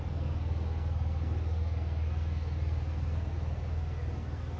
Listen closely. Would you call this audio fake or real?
fake